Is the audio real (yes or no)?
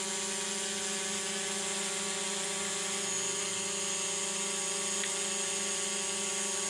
yes